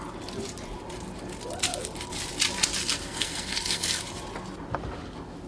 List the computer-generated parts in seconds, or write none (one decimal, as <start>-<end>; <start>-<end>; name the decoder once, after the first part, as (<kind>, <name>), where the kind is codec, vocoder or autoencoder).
2.8-4.0 (codec, SNAC)